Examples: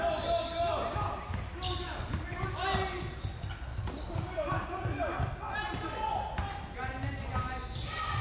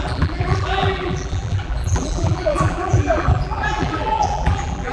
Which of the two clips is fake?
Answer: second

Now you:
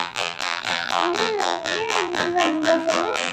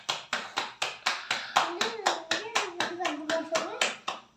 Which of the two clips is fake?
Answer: first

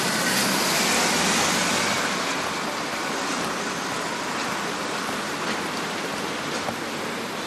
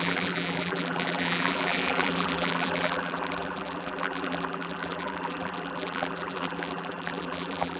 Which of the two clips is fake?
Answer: second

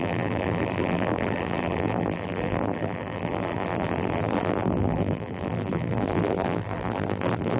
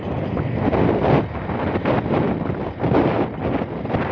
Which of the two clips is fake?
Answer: first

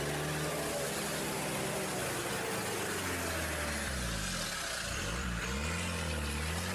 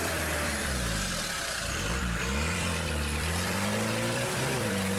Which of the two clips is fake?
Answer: second